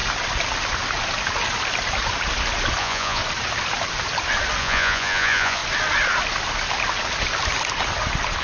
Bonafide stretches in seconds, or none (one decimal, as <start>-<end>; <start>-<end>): 0.0-2.8; 3.2-4.6; 5.6-8.4